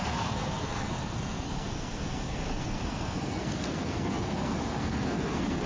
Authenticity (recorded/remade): remade